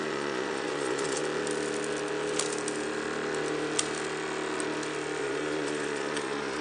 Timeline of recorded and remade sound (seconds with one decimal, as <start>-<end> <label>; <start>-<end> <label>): 0.0-1.2 remade; 1.2-5.2 recorded; 5.2-6.6 remade